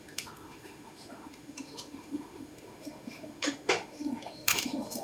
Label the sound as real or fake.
fake